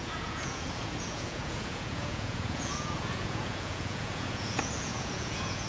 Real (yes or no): no